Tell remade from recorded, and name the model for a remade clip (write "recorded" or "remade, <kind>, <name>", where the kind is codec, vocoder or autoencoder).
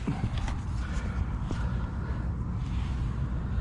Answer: recorded